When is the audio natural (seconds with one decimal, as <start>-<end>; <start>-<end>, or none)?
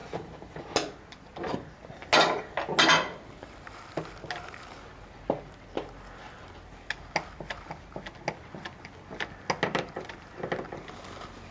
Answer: 0.6-11.5